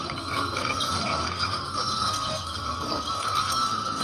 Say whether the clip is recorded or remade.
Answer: remade